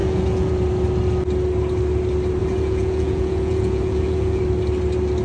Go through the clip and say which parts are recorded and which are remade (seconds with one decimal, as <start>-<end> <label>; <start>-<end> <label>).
0.0-0.5 remade; 0.5-2.4 recorded; 2.4-4.4 remade; 4.4-5.2 recorded